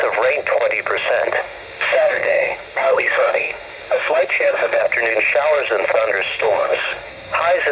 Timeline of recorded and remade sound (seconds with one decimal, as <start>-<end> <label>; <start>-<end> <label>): 0.0-1.4 recorded; 1.4-4.8 remade; 4.8-6.3 recorded; 6.3-7.1 remade; 7.1-7.7 recorded